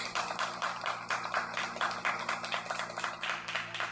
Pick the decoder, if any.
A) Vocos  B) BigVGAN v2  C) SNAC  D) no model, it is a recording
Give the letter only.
D